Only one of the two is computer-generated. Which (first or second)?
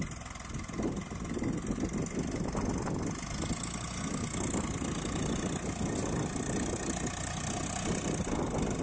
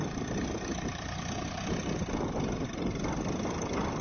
second